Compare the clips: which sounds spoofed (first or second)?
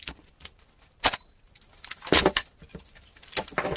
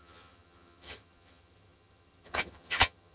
second